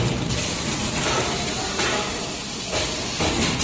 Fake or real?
real